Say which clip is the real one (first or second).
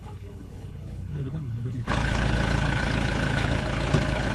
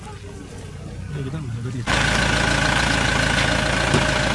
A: second